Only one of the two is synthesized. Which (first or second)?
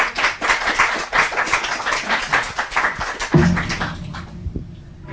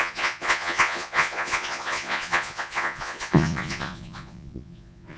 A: second